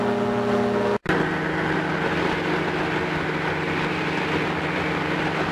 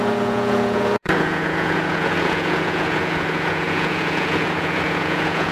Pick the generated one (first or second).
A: second